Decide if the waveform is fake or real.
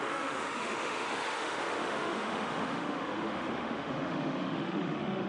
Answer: fake